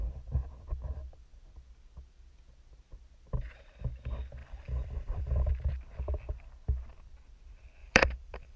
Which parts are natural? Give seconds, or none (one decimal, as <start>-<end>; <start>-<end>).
0.0-4.4; 5.5-7.8